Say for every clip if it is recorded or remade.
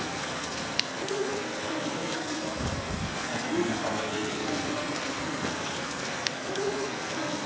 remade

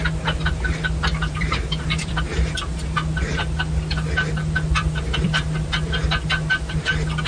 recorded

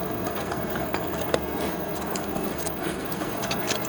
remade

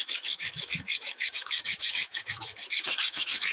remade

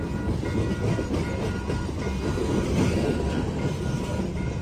remade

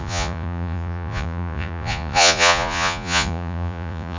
remade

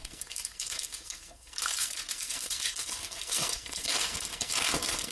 remade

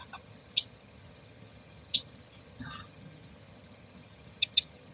remade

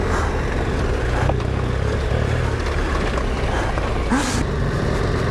recorded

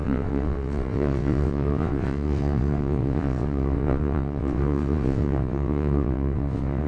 remade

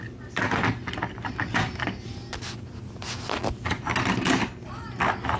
recorded